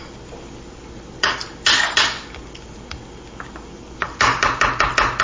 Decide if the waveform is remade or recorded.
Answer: recorded